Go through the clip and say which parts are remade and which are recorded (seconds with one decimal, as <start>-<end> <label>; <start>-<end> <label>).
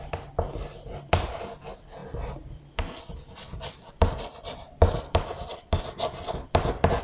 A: 0.0-2.0 recorded; 2.0-3.0 remade; 3.0-7.0 recorded